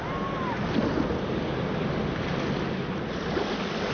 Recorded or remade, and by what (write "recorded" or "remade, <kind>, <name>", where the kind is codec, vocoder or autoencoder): recorded